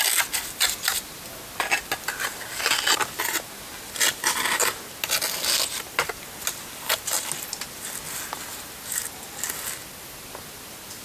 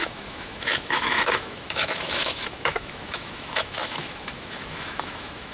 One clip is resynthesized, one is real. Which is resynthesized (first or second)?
second